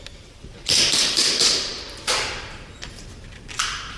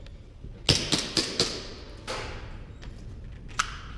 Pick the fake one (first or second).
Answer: first